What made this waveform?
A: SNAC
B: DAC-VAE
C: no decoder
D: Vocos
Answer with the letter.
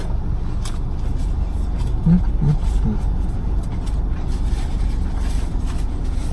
C